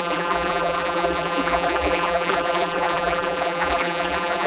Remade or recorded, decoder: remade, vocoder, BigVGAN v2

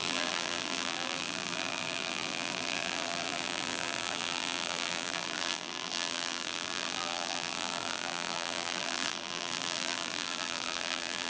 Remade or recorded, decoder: remade, vocoder, BigVGAN v2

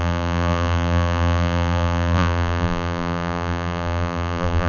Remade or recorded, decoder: remade, vocoder, BigVGAN v2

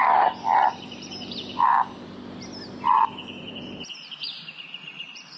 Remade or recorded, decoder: remade, vocoder, BigVGAN v2